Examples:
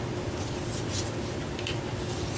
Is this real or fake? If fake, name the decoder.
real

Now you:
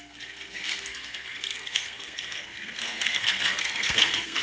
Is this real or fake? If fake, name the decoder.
fake, codec, SNAC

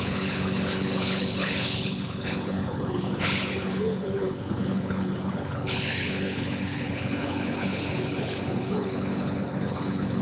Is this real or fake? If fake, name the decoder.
fake, codec, HILCodec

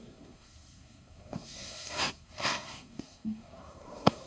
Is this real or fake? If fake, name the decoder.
fake, codec, SNAC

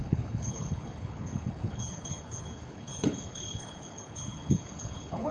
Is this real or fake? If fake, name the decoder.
fake, codec, HILCodec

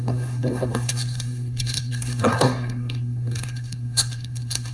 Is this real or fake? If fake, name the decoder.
fake, codec, SNAC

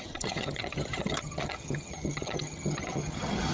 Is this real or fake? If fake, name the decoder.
fake, vocoder, HiFi-GAN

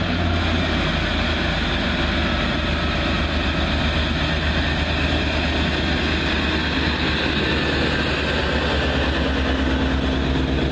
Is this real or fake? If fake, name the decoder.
real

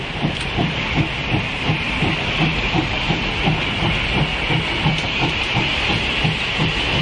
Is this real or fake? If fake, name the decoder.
real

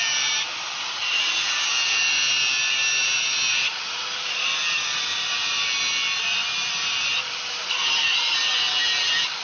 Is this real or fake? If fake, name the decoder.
fake, vocoder, BigVGAN v2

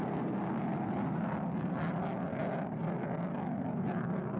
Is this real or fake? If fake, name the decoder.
real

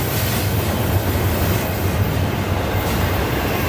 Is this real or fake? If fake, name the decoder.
real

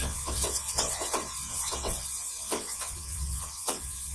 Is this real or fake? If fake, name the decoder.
fake, vocoder, WaveNeXt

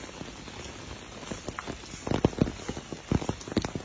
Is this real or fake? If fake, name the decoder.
real